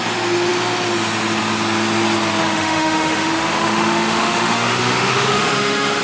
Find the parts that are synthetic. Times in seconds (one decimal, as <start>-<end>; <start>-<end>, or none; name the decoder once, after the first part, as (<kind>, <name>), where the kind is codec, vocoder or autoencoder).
2.4-6.0 (autoencoder, DAC-VAE)